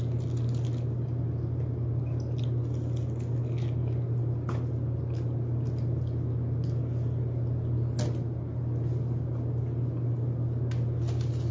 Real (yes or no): yes